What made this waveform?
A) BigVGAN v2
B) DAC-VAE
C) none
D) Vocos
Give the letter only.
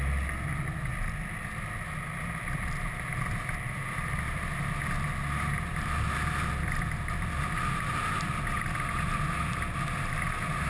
C